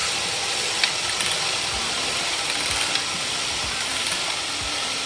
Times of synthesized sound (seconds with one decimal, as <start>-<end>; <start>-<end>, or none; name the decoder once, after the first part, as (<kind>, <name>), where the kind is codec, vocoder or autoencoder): none